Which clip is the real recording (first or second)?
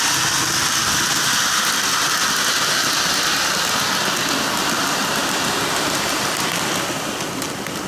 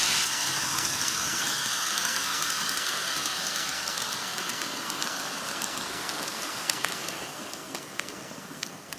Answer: first